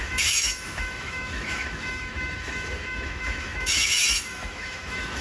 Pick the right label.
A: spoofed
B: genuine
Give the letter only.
A